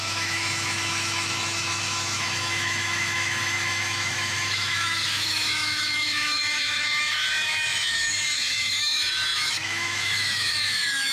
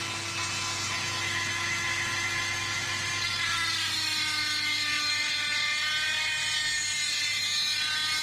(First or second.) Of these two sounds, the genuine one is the second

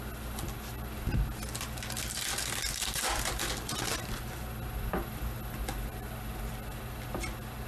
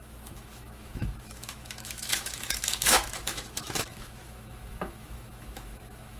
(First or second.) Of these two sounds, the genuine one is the first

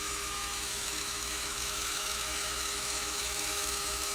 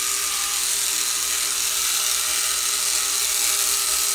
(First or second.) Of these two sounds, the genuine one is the second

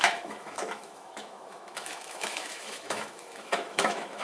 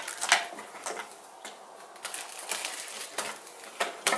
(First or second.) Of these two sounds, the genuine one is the second